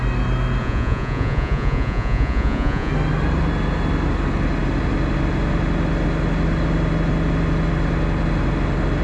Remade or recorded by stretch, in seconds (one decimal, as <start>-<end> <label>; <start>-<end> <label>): 0.0-0.6 recorded; 0.6-2.9 remade; 2.9-9.0 recorded

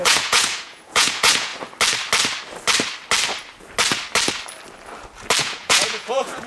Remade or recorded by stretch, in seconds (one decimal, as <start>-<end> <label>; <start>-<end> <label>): 0.0-1.5 remade; 1.5-5.4 recorded; 5.4-6.5 remade

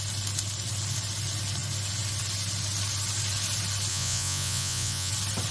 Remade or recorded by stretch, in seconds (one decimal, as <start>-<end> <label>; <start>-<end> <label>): 0.0-3.9 recorded; 3.9-5.1 remade; 5.1-5.5 recorded

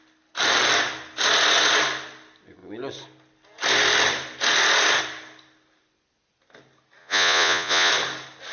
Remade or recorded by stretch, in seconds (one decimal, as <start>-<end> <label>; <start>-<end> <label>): 0.0-7.0 recorded; 7.0-7.9 remade; 7.9-8.5 recorded

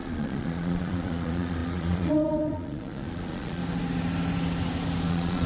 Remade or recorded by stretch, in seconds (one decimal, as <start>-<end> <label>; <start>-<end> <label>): 0.0-3.6 remade; 3.6-5.1 recorded; 5.1-5.5 remade

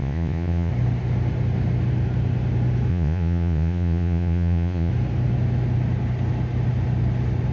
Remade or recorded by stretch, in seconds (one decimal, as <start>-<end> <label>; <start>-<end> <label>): 0.0-0.7 remade; 0.7-2.9 recorded; 2.9-4.9 remade; 4.9-7.5 recorded

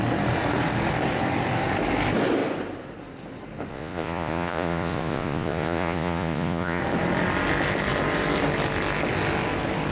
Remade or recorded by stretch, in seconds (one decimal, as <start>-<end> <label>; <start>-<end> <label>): 0.0-3.7 recorded; 3.7-6.8 remade; 6.8-9.9 recorded

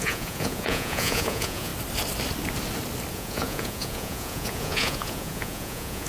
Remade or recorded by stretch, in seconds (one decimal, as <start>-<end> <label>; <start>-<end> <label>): 0.0-1.7 remade; 1.7-3.1 recorded; 3.1-6.1 remade